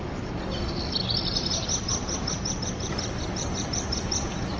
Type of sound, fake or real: real